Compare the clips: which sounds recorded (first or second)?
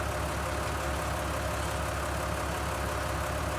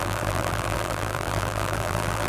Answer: first